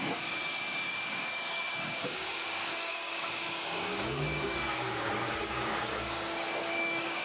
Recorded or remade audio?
remade